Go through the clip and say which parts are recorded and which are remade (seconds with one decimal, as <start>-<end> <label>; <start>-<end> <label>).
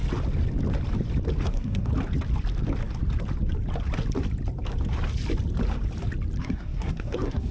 0.0-1.5 recorded; 1.5-1.9 remade; 1.9-6.4 recorded; 6.4-7.5 remade